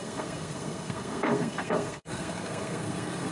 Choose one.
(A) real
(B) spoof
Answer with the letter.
B